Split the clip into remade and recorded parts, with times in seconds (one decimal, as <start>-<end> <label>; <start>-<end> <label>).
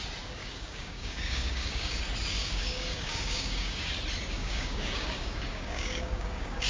0.0-0.4 recorded; 0.4-2.0 remade; 2.0-2.4 recorded; 2.4-3.9 remade; 3.9-4.4 recorded; 4.4-6.7 remade